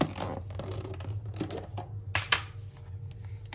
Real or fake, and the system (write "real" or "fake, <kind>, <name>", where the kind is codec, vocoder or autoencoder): real